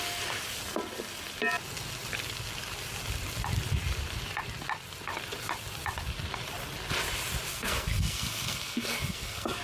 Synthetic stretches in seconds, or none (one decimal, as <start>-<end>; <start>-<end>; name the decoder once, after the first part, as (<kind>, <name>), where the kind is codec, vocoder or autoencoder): 7.5-9.6 (codec, SNAC)